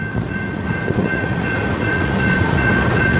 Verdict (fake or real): fake